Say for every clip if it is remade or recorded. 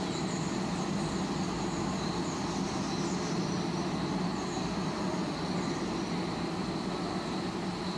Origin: recorded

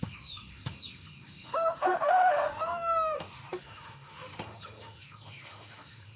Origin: remade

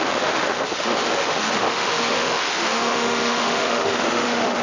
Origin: remade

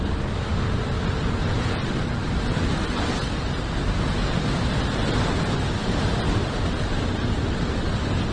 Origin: recorded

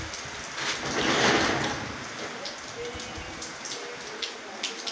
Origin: recorded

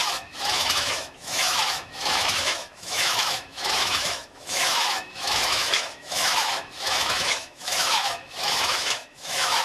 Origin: remade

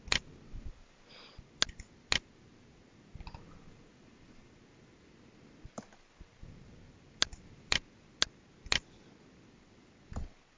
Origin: recorded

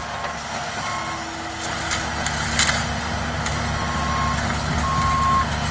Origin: recorded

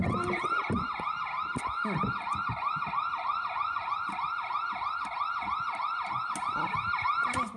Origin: recorded